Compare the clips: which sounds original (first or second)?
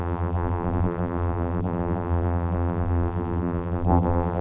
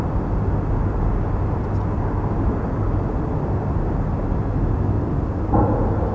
second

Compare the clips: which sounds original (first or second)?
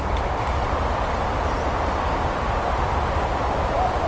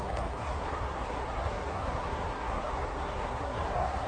first